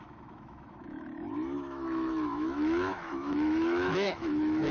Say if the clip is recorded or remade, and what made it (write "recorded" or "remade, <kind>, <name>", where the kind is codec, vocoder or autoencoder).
remade, autoencoder, DAC-VAE